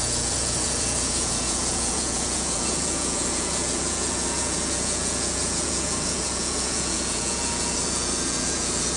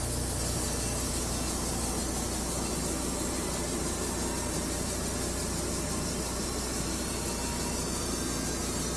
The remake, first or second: first